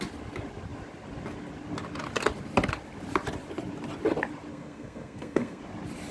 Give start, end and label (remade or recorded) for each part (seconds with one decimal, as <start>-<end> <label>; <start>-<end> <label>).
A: 0.0-4.5 recorded; 4.5-5.6 remade; 5.6-6.1 recorded